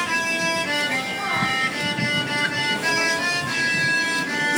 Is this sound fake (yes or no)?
yes